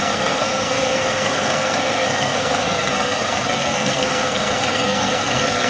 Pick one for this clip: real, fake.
fake